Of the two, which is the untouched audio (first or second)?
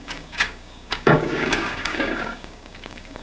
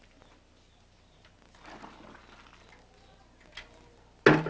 second